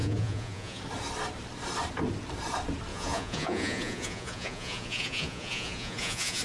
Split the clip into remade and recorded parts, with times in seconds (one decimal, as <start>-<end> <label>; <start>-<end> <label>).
0.0-0.8 remade; 0.8-2.9 recorded; 2.9-6.4 remade